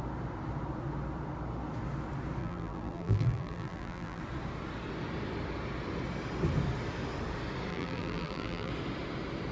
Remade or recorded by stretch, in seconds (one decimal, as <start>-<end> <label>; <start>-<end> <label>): 0.0-2.4 recorded; 2.4-4.2 remade; 4.2-7.7 recorded; 7.7-8.7 remade; 8.7-9.5 recorded